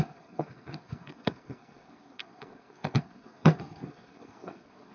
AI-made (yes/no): yes